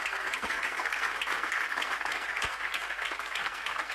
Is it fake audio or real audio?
fake